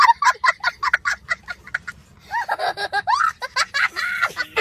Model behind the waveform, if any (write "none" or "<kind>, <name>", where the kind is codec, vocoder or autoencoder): none